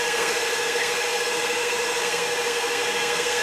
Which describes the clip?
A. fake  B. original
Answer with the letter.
A